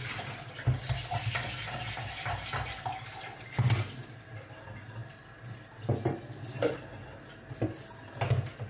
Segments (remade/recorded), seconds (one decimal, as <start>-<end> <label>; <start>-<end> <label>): 0.0-8.7 recorded

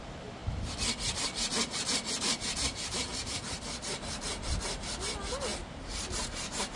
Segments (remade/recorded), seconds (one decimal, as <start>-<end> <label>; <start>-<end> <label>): 0.0-5.5 recorded; 5.5-6.8 remade